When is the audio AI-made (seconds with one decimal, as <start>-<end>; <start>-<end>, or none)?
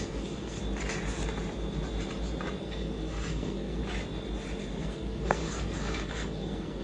0.0-0.6; 2.6-3.8; 4.6-6.8